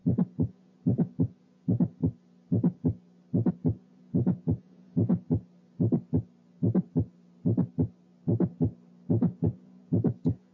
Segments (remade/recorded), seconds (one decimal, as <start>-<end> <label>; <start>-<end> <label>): 0.0-2.0 remade; 2.0-3.5 recorded; 3.5-5.1 remade; 5.1-9.1 recorded; 9.1-10.5 remade

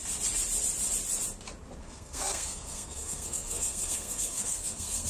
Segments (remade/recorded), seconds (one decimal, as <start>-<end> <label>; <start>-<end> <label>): 0.0-1.8 recorded; 1.8-5.1 remade